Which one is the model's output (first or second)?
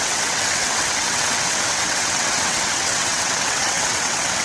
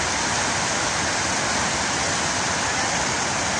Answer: first